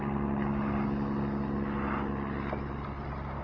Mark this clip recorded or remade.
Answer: recorded